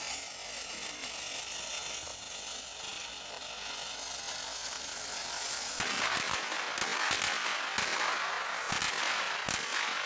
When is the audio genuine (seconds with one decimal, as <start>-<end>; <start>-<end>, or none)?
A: 0.0-0.4; 1.7-2.9; 6.6-10.1